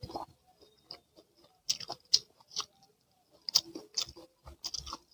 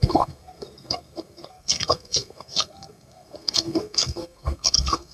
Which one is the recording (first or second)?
first